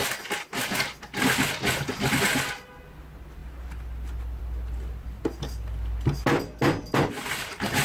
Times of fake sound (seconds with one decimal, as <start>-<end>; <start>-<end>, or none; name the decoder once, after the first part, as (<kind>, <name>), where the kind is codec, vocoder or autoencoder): none